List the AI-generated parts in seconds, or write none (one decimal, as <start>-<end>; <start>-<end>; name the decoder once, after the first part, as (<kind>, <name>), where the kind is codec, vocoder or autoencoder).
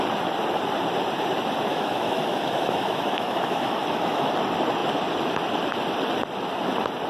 1.7-4.3 (autoencoder, DAC-VAE)